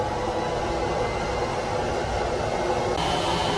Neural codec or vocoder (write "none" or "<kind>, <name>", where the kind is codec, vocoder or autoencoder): none